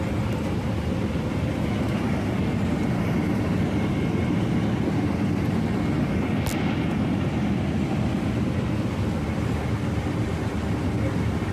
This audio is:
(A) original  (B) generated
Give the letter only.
A